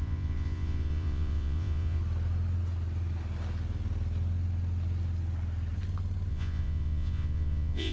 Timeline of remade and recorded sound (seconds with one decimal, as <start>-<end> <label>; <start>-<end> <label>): 0.0-2.0 remade; 2.0-6.3 recorded; 6.3-7.9 remade